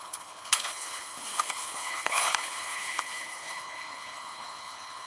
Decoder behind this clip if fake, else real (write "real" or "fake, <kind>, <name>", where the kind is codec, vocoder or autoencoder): fake, codec, HILCodec